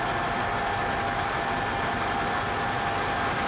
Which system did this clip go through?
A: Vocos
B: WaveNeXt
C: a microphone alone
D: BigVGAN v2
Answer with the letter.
C